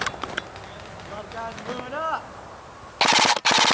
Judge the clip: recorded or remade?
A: recorded